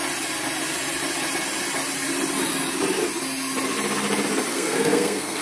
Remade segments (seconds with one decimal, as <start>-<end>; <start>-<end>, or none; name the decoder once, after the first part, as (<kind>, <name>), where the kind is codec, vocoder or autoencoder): 4.5-5.4 (codec, SNAC)